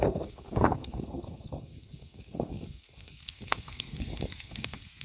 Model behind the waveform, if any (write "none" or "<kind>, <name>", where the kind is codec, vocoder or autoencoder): codec, SNAC